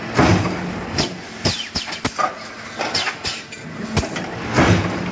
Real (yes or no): yes